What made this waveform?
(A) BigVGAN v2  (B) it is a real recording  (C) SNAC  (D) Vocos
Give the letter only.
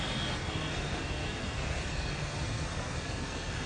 C